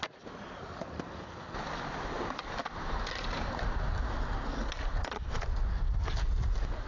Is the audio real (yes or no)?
yes